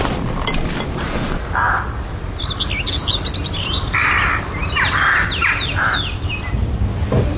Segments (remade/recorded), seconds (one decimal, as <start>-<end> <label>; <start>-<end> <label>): 0.0-7.4 recorded